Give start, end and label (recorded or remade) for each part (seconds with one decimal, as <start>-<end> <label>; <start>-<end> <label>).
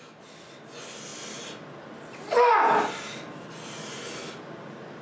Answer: 0.0-5.0 recorded